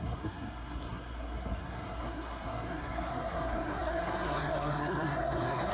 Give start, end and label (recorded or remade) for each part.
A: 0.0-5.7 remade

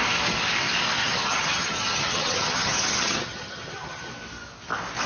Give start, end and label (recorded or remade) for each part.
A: 0.0-1.0 recorded; 1.0-4.1 remade; 4.1-5.1 recorded